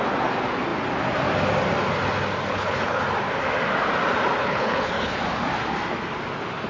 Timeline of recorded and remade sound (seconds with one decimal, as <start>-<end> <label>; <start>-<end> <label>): 0.0-2.5 recorded; 2.5-3.0 remade; 3.0-4.4 recorded; 4.4-5.2 remade; 5.2-6.7 recorded